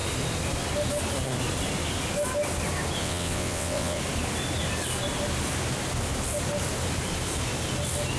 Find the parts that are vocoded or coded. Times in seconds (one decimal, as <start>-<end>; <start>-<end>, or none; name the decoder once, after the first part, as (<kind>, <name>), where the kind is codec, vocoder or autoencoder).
3.0-4.0 (vocoder, WaveNeXt)